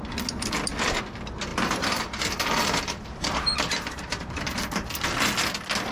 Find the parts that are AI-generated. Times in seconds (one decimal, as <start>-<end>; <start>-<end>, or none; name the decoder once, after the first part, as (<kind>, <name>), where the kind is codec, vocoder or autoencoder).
1.5-4.9 (vocoder, BigVGAN v2)